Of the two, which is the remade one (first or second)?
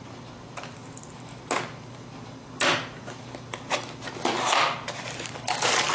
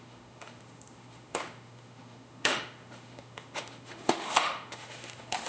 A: second